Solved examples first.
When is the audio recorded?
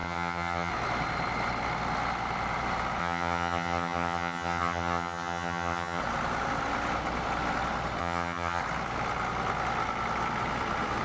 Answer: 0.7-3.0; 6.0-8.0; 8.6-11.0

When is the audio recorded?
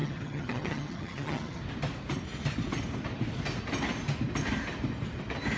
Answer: 1.6-5.6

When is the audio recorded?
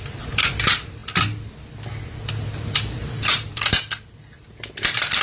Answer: none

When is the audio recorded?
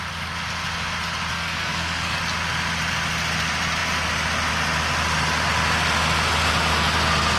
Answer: 0.0-1.3; 2.2-7.4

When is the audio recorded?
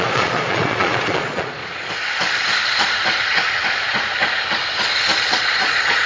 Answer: 1.6-5.3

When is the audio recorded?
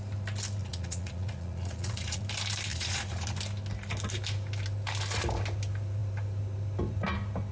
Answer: 0.0-0.6; 2.2-2.7; 3.4-7.5